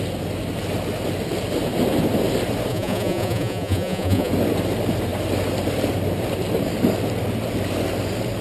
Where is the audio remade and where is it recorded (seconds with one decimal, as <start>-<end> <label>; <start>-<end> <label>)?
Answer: 0.0-2.7 recorded; 2.7-4.3 remade; 4.3-8.4 recorded